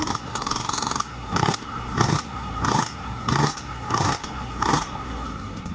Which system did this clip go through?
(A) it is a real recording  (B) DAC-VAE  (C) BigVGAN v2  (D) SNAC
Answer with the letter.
D